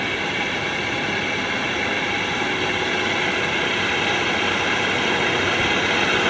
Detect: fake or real real